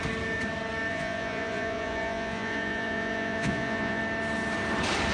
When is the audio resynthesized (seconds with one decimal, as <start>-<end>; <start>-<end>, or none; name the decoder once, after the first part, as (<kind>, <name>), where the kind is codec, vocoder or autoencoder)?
0.9-4.0 (vocoder, Vocos)